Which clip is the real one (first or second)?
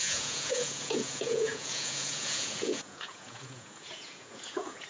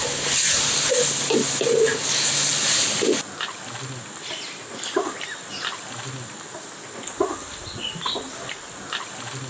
second